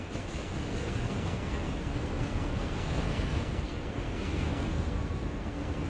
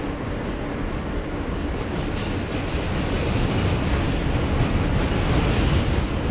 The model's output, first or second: first